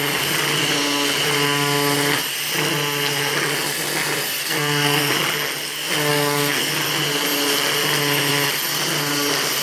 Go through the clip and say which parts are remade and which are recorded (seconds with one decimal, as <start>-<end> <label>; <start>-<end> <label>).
0.0-4.4 recorded; 4.4-5.1 remade; 5.1-6.1 recorded; 6.1-6.7 remade; 6.7-9.6 recorded